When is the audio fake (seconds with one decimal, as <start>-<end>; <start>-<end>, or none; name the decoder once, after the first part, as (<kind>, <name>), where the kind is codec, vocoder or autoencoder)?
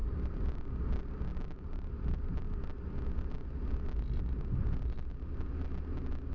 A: 0.0-0.6 (vocoder, BigVGAN v2); 1.3-2.6